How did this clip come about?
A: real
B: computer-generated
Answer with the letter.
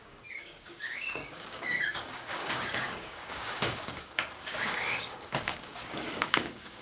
B